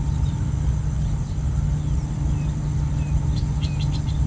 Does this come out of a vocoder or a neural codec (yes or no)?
no